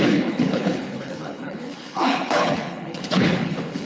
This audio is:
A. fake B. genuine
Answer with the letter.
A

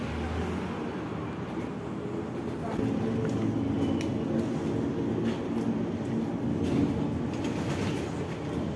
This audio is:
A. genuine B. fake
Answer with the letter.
A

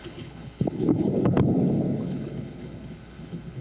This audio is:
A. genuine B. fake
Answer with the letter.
B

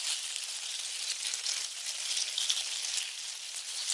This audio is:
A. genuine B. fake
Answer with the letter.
A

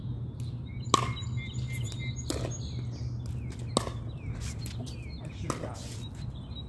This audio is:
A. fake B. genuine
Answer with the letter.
B